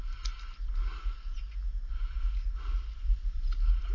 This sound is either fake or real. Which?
real